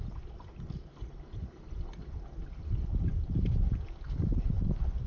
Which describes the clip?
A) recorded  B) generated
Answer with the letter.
A